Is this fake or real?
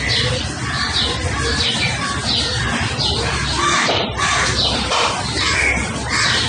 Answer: real